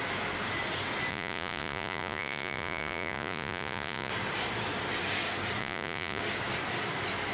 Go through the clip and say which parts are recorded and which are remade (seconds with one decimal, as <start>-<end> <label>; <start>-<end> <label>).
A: 0.0-1.1 recorded; 1.1-4.1 remade; 4.1-5.6 recorded; 5.6-6.2 remade; 6.2-7.3 recorded